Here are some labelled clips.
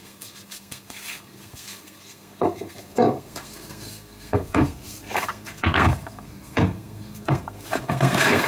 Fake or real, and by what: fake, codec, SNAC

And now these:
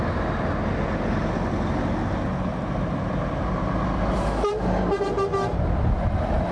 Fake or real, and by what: real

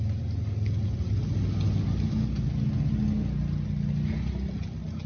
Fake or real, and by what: real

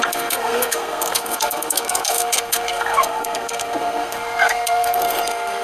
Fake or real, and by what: fake, codec, SNAC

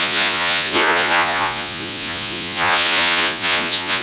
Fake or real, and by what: fake, vocoder, Vocos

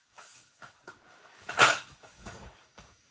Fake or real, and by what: fake, codec, DAC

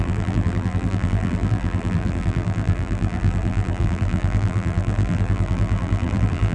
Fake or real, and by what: fake, vocoder, BigVGAN v2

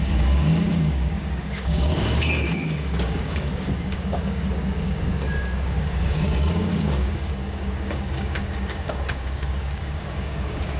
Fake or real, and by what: fake, codec, DAC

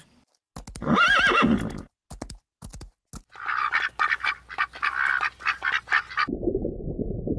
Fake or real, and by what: real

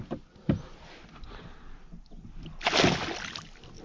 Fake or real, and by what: real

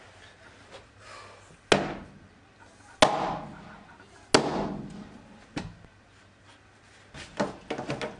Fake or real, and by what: real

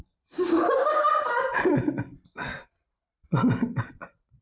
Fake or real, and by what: fake, vocoder, BigVGAN v2